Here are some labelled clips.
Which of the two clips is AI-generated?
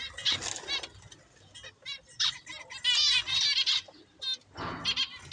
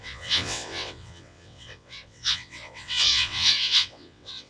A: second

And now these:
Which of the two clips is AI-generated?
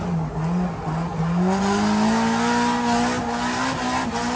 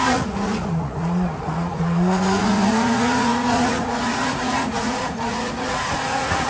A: second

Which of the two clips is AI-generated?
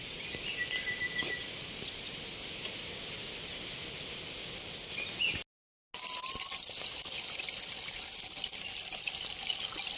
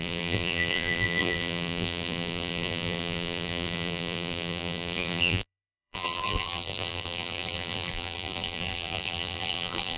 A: second